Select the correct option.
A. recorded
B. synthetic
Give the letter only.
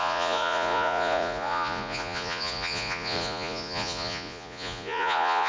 B